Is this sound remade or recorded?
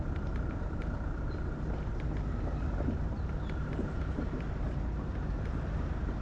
remade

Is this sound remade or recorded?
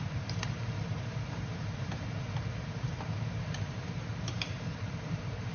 remade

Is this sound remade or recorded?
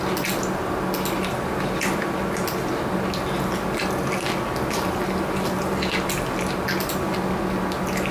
recorded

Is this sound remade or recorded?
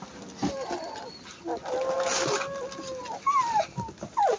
recorded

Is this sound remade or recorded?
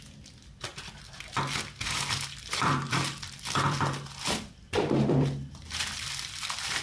remade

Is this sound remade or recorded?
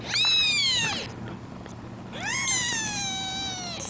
recorded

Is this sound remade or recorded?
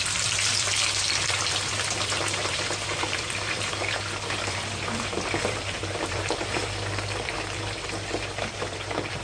remade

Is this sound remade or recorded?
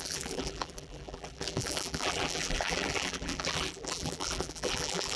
remade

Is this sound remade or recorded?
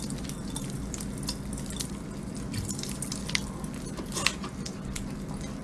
recorded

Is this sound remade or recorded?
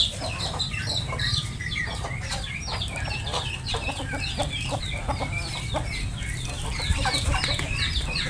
remade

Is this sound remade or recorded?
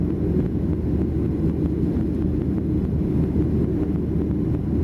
recorded